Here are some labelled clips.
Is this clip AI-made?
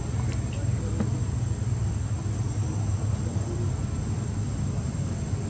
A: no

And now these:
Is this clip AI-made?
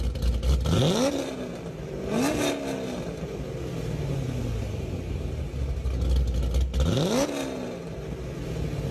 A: no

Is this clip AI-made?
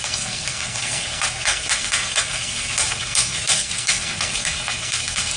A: yes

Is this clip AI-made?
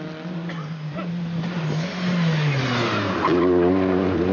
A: no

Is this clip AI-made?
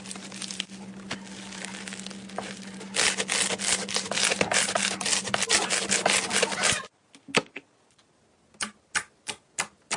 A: no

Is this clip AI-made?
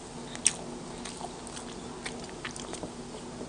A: no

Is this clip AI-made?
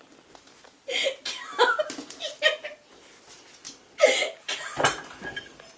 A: no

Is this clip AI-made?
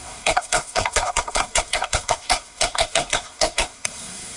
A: yes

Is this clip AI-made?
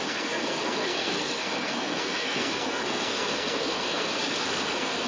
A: yes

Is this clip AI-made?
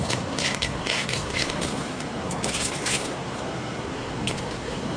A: yes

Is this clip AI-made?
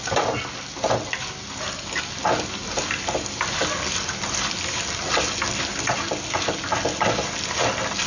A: no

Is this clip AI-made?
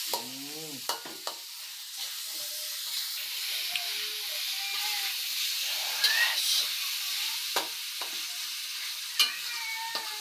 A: no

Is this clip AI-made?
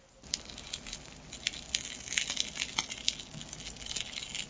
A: no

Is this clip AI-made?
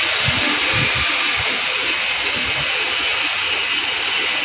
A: no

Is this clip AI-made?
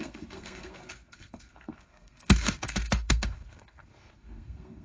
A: yes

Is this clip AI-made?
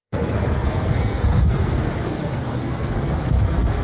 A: yes